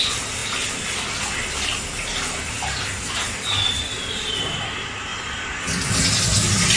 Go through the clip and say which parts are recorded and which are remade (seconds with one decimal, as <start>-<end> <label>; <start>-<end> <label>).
0.0-5.1 recorded; 5.1-5.6 remade; 5.6-6.8 recorded